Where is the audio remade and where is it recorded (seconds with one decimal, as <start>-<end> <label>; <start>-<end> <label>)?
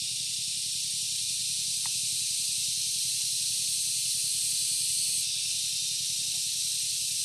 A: 0.0-1.4 remade; 1.4-2.0 recorded; 2.0-4.3 remade; 4.3-7.2 recorded